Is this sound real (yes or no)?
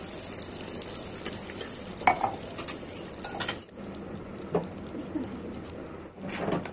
yes